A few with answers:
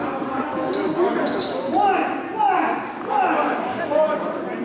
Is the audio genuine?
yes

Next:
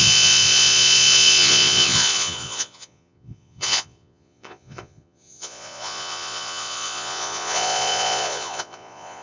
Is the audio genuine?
no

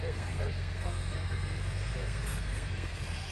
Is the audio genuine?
no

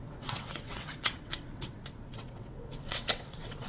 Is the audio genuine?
no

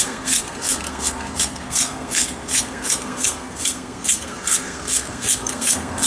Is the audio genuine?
no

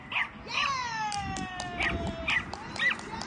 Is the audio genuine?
yes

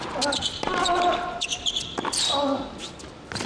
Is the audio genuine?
no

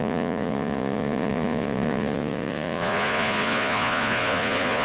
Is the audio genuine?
no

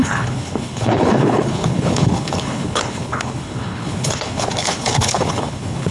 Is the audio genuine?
no